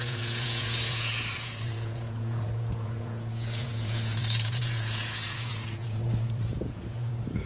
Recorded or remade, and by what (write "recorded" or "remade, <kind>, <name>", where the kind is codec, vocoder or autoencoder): remade, vocoder, Vocos